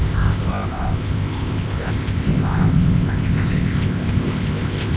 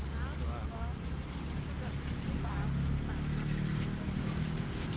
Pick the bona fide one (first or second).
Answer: second